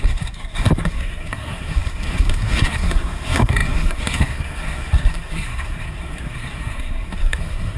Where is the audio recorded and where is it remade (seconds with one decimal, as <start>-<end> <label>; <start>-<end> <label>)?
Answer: 0.0-7.8 remade